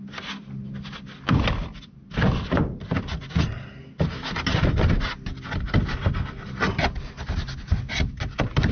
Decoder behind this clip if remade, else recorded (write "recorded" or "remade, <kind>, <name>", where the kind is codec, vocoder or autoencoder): recorded